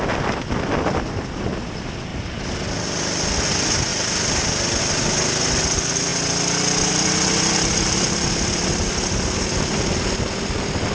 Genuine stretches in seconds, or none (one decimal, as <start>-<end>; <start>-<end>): 2.1-2.6; 6.1-6.9